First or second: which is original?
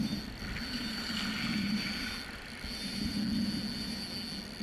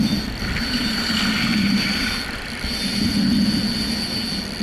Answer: first